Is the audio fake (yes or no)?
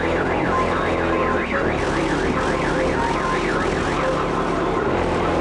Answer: no